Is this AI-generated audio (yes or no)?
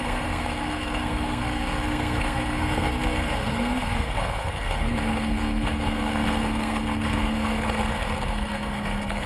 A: yes